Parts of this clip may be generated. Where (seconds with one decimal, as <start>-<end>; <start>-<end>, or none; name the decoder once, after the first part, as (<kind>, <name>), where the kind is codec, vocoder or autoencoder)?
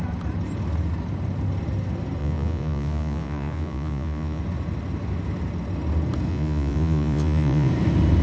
2.2-4.4 (vocoder, Vocos); 6.3-7.7